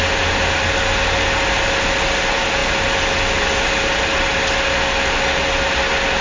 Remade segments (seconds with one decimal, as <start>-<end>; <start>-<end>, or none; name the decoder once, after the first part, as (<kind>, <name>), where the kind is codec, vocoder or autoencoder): none